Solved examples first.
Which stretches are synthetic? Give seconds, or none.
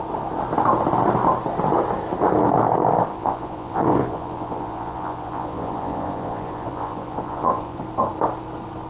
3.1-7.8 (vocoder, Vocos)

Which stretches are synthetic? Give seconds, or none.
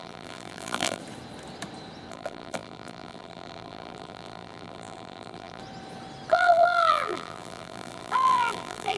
0.0-1.0 (vocoder, BigVGAN v2); 2.1-5.6; 6.3-9.0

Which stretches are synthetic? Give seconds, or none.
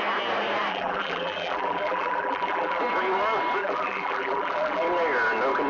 0.7-2.8 (vocoder, BigVGAN v2); 3.6-4.8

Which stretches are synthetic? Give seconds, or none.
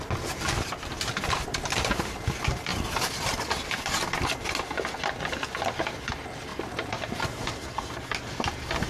none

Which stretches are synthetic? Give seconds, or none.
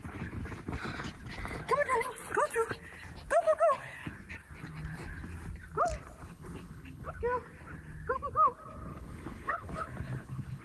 6.2-7.1 (codec, HILCodec); 8.9-10.6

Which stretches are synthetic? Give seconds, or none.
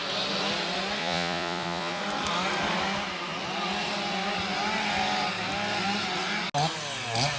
1.0-2.0 (vocoder, Vocos)